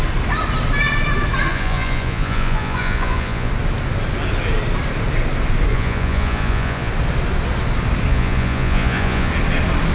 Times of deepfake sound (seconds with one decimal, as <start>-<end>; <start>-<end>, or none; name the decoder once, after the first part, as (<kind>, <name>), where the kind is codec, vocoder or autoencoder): 1.5-3.5 (vocoder, Vocos); 5.7-6.9; 8.1-9.3

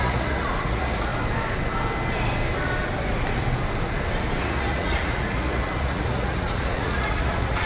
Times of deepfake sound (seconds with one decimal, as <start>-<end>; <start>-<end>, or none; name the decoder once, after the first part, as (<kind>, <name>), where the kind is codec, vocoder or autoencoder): 0.0-1.1 (vocoder, Vocos); 4.4-7.7

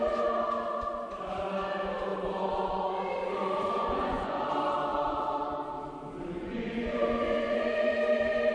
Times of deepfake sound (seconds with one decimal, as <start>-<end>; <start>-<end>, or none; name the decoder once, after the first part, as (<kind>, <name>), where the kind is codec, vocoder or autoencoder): 2.1-4.5 (vocoder, Vocos); 4.9-5.4; 6.4-7.9

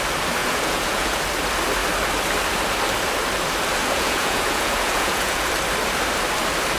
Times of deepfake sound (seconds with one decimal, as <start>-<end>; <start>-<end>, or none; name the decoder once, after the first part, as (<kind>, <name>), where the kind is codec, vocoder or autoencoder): 0.4-1.2 (vocoder, Vocos); 3.8-5.5

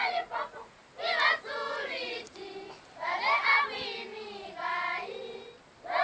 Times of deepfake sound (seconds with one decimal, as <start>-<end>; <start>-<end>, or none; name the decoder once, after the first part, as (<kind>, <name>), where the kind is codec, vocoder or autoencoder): 0.0-0.8 (vocoder, Vocos); 1.7-2.3

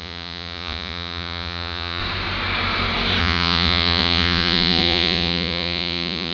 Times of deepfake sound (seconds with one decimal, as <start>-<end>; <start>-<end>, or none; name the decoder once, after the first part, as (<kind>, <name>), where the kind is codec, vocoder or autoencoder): 0.0-2.0 (vocoder, Vocos); 3.2-6.3

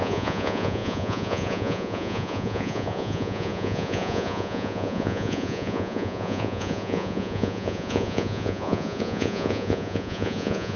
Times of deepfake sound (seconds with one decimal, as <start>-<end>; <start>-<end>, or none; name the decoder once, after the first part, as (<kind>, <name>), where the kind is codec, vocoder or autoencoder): 0.0-10.8 (vocoder, Vocos)